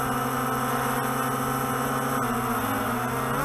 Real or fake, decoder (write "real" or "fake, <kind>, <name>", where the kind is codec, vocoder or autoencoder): real